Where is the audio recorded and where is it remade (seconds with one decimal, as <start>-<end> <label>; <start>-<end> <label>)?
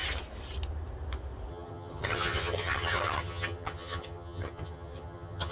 0.0-1.5 recorded; 1.5-5.5 remade